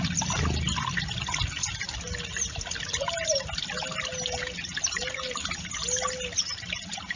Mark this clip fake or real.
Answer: real